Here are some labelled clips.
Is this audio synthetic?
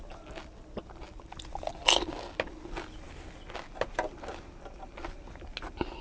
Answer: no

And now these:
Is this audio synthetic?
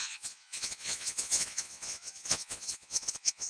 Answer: yes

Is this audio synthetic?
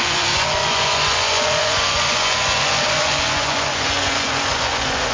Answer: yes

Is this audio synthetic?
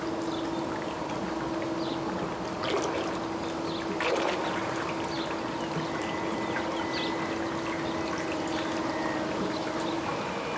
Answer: no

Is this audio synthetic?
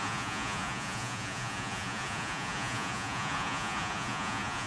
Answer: yes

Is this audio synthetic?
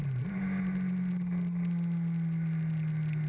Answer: no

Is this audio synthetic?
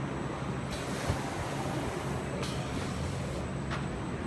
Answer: no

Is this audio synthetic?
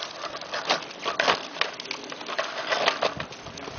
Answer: no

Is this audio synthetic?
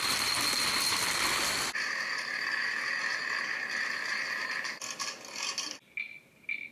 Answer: no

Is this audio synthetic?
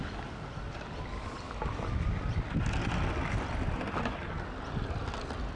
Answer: no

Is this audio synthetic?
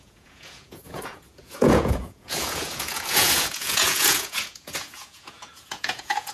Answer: yes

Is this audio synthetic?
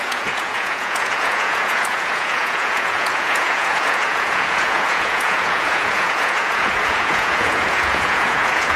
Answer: yes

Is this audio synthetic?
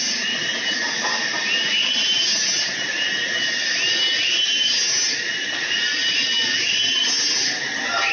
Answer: no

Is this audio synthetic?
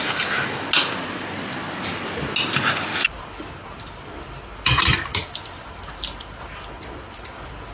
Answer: no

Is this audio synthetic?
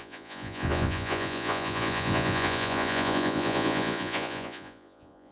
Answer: yes